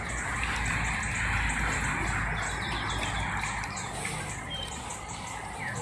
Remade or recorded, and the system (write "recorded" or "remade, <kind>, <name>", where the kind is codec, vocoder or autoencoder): recorded